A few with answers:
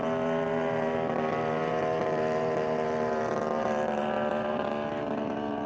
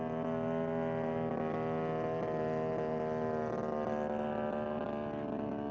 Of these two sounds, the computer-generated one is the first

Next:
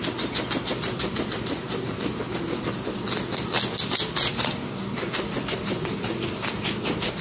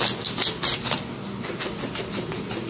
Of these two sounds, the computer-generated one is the first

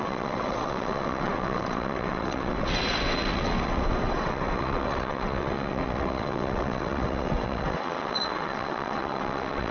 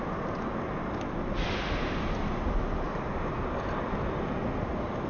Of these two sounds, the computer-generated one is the first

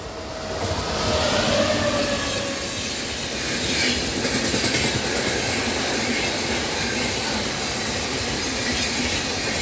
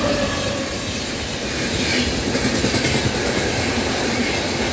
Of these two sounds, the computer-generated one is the second